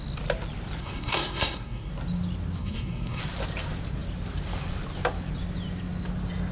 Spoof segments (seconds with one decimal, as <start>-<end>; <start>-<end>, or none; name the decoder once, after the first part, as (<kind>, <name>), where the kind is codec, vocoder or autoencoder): 0.8-1.9 (codec, SNAC); 2.6-3.2